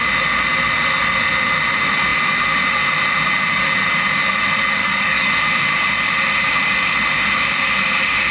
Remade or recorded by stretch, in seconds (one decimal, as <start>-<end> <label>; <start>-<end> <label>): 0.0-4.8 recorded; 4.8-5.3 remade; 5.3-8.3 recorded